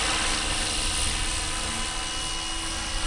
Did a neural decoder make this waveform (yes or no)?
no